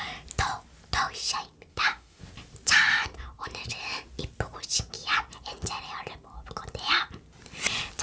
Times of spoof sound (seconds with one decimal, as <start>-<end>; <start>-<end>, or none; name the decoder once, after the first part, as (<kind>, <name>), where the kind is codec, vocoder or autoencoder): 1.7-2.2 (autoencoder, DAC-VAE)